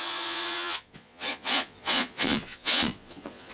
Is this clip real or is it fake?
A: fake